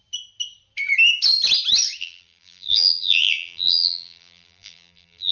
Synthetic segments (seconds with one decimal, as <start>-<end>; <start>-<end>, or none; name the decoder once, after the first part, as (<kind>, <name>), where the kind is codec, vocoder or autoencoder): 2.0-5.3 (vocoder, BigVGAN v2)